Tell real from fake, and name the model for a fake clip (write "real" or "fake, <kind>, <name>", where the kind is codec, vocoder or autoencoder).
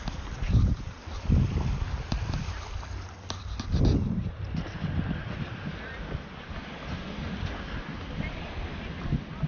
real